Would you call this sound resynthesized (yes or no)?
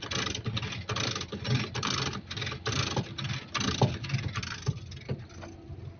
no